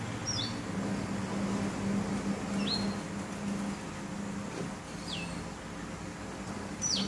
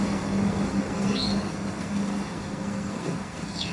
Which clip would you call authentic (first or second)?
first